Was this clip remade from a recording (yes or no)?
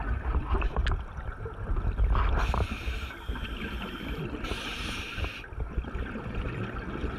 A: no